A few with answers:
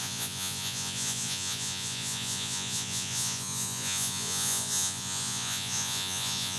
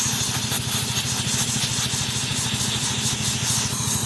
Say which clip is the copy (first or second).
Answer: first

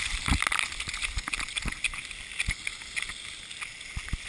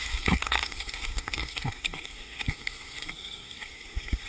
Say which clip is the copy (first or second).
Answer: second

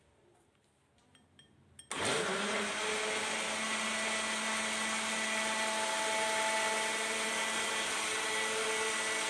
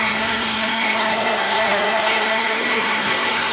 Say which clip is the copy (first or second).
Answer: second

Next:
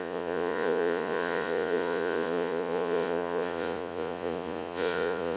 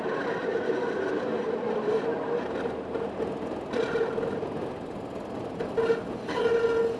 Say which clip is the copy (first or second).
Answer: first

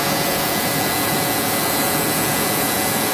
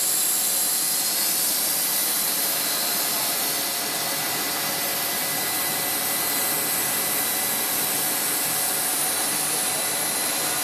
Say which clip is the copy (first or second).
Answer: first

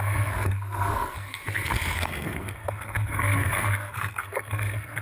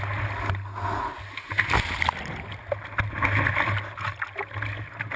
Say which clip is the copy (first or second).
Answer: first